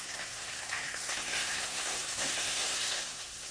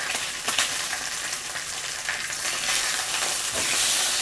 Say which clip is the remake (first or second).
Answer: first